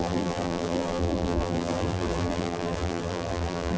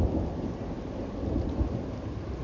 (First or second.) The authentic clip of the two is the second